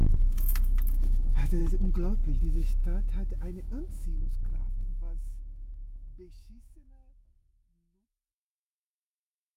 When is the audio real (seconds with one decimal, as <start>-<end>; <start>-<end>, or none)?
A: 1.6-2.4